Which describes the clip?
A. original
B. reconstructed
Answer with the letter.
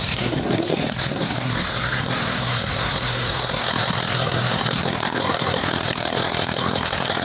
B